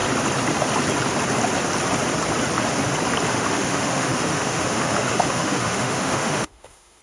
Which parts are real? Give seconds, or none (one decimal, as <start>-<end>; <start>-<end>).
0.0-3.3